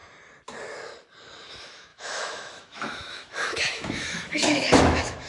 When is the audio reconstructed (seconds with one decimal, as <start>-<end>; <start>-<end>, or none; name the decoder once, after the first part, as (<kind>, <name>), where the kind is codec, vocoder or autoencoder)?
1.5-5.3 (autoencoder, DAC-VAE)